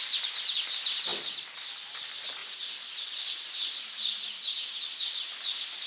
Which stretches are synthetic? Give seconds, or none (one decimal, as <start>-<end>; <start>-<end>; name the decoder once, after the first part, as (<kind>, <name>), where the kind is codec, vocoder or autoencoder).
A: none